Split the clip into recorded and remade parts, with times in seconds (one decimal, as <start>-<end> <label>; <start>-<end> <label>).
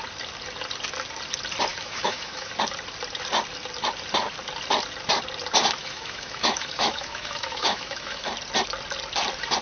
0.0-1.7 recorded; 1.7-2.5 remade; 2.5-5.8 recorded; 5.8-8.3 remade; 8.3-9.6 recorded